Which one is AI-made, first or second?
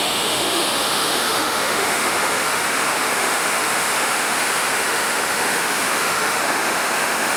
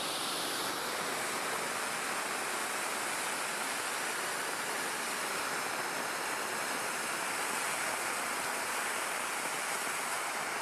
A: first